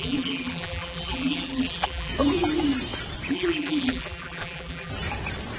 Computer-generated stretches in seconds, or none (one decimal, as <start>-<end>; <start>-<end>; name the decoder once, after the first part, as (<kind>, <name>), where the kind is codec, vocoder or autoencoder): 0.0-2.1 (vocoder, BigVGAN v2); 3.3-4.9